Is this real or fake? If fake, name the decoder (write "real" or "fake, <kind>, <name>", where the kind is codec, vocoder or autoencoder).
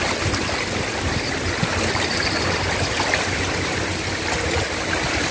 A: real